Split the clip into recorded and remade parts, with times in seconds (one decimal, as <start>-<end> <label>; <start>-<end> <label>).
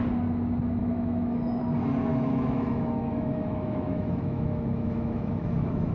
0.0-0.8 recorded; 0.8-1.6 remade; 1.6-2.1 recorded; 2.1-5.9 remade